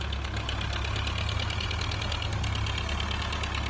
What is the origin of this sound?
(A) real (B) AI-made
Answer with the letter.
A